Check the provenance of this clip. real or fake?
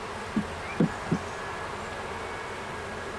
real